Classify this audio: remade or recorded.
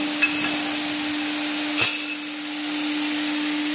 recorded